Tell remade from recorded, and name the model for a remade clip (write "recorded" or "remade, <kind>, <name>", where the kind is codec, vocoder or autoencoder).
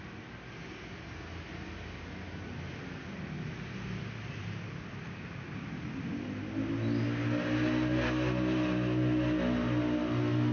recorded